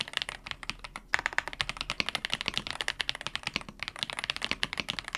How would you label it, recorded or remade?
recorded